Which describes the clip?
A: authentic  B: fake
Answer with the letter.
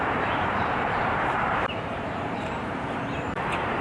B